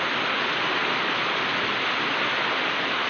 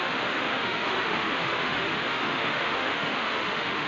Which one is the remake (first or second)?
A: second